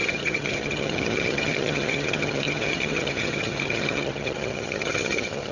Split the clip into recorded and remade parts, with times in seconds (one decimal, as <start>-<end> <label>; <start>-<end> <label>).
0.0-5.5 remade